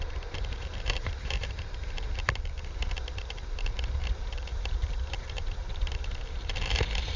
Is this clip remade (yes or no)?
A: yes